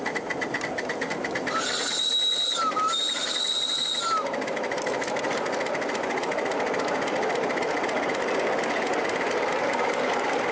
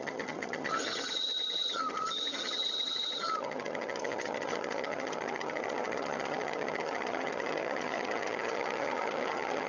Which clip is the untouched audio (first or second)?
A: first